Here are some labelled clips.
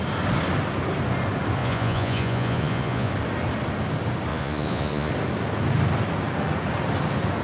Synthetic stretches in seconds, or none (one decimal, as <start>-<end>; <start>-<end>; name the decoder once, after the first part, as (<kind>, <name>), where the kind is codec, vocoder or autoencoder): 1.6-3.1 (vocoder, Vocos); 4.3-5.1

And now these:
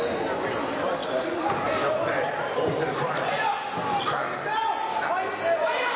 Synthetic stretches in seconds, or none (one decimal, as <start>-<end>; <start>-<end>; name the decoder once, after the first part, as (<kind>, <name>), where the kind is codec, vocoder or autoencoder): none

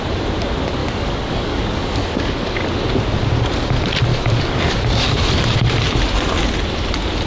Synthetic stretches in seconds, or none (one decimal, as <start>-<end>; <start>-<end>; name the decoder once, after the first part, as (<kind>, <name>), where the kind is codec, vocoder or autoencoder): 0.8-2.6 (codec, DAC); 4.1-5.2

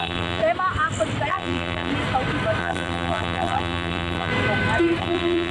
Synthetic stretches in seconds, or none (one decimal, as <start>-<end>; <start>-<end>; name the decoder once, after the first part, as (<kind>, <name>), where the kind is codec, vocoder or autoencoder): 0.0-0.4 (vocoder, BigVGAN v2); 1.3-1.9; 2.6-4.3; 5.0-5.5